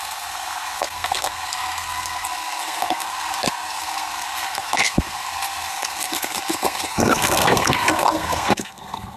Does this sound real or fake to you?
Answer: fake